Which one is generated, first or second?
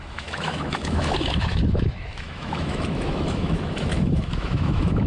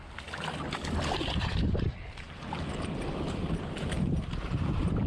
first